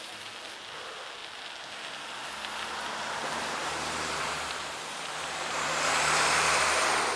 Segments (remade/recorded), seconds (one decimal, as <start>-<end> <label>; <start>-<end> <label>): 0.0-3.6 recorded; 3.6-6.8 remade; 6.8-7.2 recorded